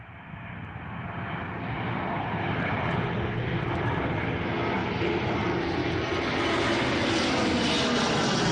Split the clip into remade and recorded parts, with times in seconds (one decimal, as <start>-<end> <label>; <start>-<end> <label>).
0.0-4.8 recorded; 4.8-5.3 remade; 5.3-8.5 recorded